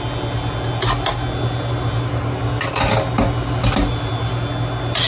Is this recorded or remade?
recorded